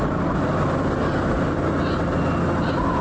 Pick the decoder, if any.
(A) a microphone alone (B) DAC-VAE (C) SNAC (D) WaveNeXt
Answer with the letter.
A